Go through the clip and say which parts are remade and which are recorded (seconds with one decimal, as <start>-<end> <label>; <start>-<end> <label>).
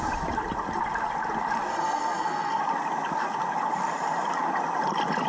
0.0-1.7 recorded; 1.7-2.6 remade; 2.6-5.3 recorded